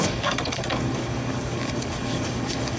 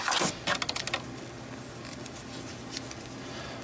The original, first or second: second